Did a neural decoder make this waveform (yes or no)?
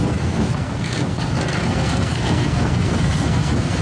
yes